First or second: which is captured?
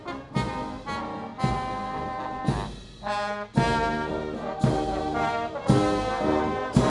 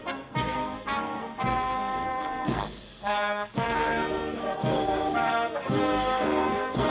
first